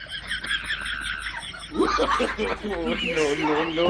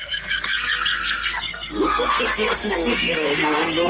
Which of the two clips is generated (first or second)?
second